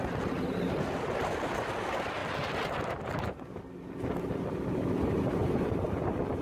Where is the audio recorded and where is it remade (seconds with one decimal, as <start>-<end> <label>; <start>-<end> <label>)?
0.0-6.4 recorded